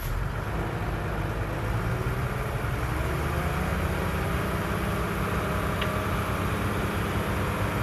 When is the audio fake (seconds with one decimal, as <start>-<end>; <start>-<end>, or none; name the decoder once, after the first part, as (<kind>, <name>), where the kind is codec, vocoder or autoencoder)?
none